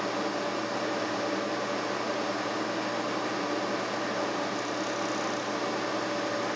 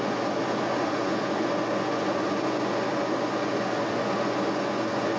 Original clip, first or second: first